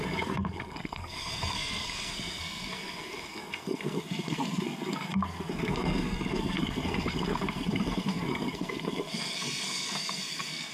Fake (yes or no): yes